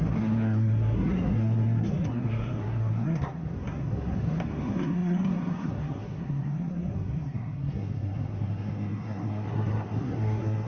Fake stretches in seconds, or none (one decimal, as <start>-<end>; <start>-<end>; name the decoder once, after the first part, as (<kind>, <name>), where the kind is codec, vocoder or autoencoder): 0.0-10.7 (codec, SNAC)